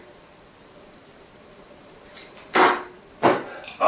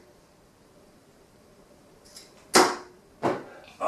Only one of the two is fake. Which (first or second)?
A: first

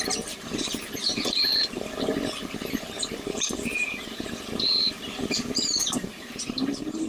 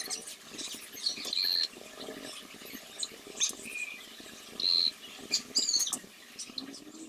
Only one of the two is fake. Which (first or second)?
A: first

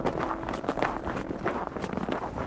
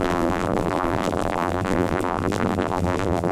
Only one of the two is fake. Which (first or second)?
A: second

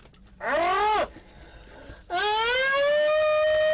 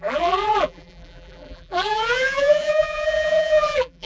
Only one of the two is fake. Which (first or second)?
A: second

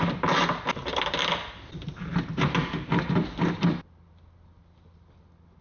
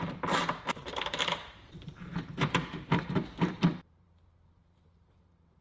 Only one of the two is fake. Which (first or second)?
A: second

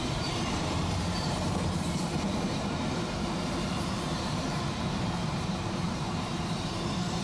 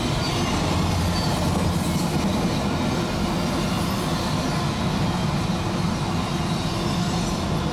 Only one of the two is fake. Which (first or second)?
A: first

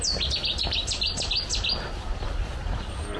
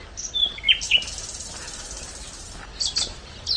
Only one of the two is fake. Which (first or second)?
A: first